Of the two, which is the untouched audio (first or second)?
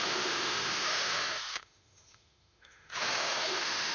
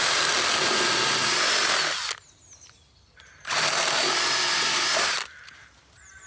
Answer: second